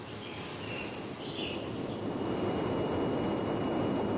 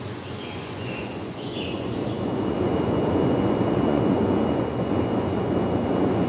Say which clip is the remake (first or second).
second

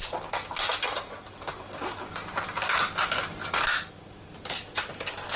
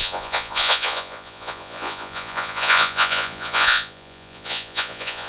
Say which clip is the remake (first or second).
second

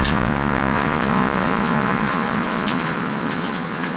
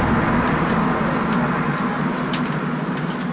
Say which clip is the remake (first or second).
first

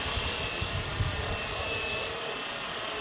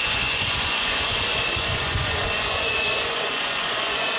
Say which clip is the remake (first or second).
second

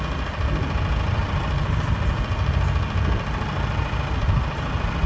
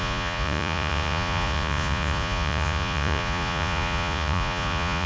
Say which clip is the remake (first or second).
second